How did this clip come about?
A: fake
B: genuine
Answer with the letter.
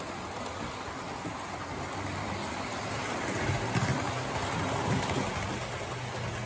B